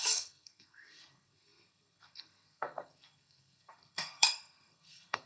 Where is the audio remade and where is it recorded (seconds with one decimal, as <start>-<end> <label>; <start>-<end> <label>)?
0.0-5.3 remade